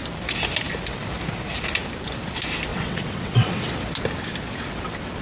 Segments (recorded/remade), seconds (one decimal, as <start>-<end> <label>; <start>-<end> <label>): 0.0-2.7 recorded; 2.7-3.7 remade; 3.7-5.2 recorded